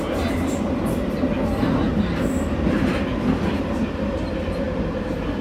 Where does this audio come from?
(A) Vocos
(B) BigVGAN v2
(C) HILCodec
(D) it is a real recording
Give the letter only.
D